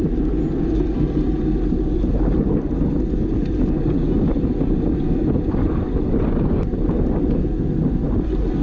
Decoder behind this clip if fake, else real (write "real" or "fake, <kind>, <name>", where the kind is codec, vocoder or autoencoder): real